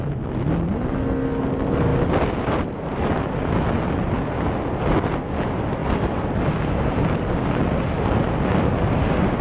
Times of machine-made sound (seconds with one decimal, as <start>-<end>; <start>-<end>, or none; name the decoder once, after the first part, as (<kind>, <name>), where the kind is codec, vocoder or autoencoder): 1.9-3.6 (vocoder, BigVGAN v2); 5.8-7.9

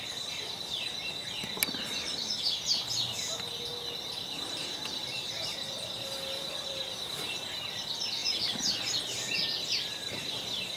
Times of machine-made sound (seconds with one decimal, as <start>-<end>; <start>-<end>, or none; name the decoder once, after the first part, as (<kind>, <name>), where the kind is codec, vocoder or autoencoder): 0.0-0.9 (vocoder, BigVGAN v2); 2.1-10.8

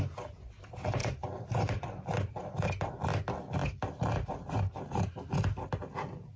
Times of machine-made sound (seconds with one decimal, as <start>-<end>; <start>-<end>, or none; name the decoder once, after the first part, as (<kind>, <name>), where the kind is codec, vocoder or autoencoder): 1.0-2.9 (vocoder, BigVGAN v2); 3.6-5.1